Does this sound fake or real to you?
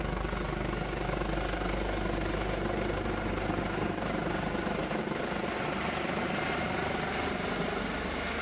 real